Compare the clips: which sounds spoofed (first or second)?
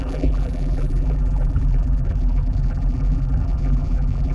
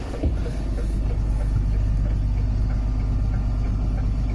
first